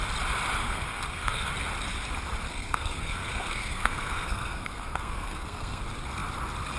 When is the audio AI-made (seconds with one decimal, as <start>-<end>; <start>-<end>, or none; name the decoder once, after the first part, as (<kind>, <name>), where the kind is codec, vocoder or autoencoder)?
0.6-1.5 (codec, SNAC); 2.5-5.8